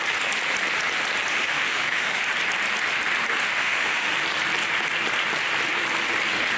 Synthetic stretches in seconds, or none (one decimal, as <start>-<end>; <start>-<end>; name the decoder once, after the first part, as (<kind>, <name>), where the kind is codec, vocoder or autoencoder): 1.3-2.2 (autoencoder, DAC-VAE); 3.4-4.1